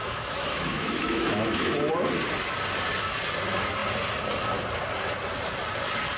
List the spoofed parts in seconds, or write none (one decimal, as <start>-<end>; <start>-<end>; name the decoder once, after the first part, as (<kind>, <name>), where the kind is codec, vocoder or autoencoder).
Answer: 0.0-1.9 (autoencoder, DAC-VAE)